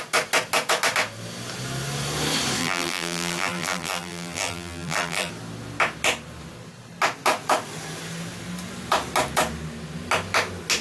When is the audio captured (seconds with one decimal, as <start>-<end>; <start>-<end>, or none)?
0.0-2.6; 5.3-10.8